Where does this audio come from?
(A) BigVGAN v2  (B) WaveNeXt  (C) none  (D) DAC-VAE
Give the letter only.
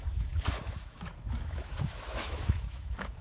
D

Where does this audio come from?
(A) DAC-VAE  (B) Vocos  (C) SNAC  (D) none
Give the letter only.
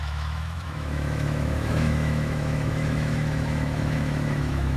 A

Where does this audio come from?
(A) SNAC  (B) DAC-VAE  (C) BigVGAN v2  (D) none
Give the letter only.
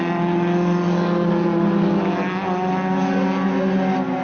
D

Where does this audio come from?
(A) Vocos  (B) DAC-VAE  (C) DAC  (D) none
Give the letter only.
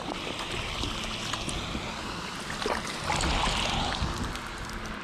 D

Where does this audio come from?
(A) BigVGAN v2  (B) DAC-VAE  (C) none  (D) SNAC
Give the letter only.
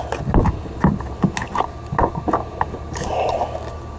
C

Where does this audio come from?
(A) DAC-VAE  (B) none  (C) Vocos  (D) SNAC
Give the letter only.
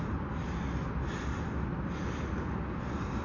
B